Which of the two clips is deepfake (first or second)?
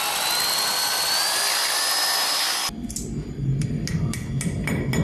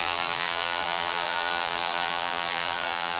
second